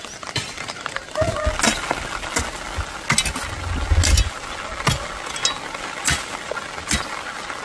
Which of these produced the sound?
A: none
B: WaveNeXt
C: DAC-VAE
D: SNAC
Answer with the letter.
A